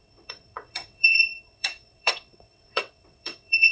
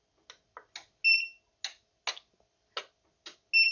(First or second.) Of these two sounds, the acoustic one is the second